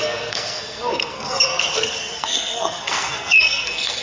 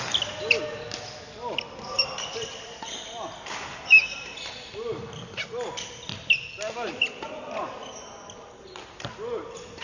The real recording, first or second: second